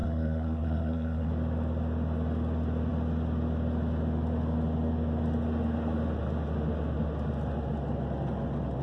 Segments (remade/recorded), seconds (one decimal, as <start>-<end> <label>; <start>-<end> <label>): 0.0-1.3 remade; 1.3-8.8 recorded